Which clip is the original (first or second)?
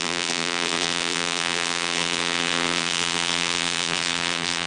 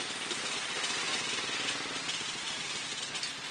second